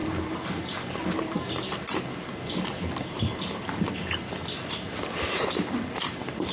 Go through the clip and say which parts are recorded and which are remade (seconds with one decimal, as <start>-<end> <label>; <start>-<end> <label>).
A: 0.0-6.5 recorded